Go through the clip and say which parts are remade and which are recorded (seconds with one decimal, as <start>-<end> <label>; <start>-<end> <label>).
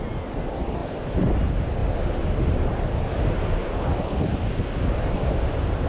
0.0-5.9 recorded